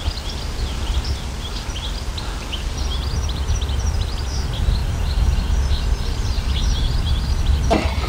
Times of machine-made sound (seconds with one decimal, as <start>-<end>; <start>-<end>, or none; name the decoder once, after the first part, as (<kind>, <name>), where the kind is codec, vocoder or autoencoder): 4.8-5.4 (vocoder, BigVGAN v2)